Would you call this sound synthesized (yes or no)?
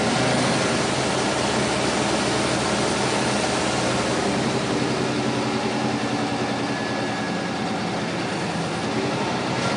no